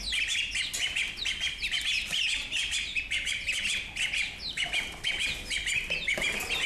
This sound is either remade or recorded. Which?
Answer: recorded